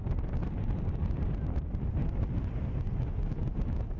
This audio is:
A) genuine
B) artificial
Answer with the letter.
A